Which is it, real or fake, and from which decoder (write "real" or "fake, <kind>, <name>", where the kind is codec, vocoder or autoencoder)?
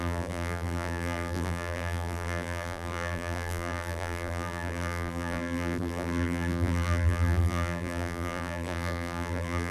fake, vocoder, BigVGAN v2